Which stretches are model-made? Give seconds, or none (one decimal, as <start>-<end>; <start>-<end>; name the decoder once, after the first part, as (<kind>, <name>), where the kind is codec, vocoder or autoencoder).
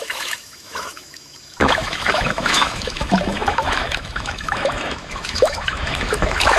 0.0-6.6 (autoencoder, DAC-VAE)